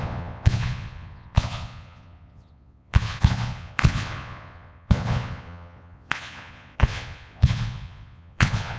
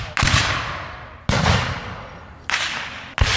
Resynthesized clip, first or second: first